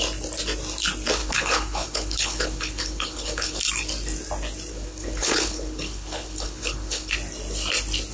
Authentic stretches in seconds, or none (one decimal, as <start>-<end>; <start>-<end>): 0.0-1.2; 3.6-4.7; 7.1-8.1